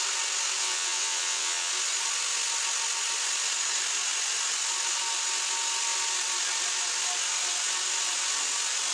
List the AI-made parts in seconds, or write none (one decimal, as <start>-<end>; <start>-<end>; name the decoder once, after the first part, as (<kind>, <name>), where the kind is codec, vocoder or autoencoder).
0.6-1.7 (vocoder, WaveNeXt)